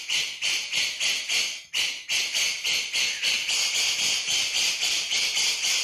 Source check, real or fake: real